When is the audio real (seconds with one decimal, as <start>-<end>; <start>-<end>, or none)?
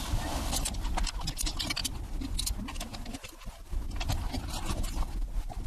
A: 0.0-5.7